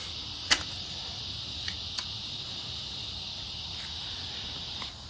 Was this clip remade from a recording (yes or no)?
no